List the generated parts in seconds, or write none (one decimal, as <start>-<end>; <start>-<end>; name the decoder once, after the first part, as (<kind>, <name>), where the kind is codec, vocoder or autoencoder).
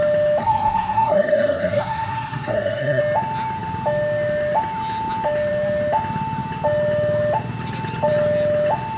0.4-3.0 (codec, SNAC)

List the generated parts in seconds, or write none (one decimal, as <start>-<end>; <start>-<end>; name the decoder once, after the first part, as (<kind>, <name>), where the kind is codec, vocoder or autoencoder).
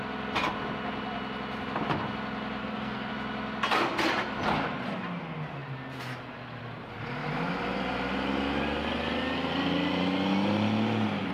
2.6-3.1 (codec, SNAC)